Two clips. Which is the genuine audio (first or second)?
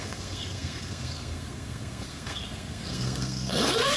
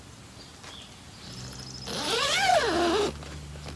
second